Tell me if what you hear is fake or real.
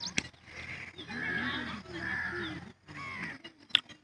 real